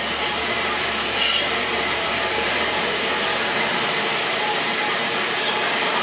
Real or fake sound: fake